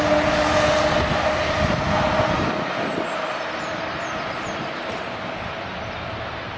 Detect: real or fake real